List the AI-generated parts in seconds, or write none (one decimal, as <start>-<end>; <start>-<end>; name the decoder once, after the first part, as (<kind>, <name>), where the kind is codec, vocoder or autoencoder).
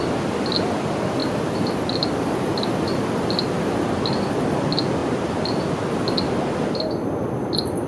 none